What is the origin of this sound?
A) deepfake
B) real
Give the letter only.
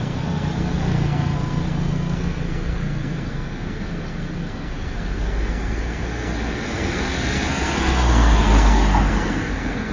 A